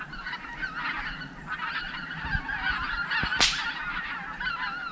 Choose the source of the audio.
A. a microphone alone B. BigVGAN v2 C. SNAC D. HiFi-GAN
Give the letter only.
A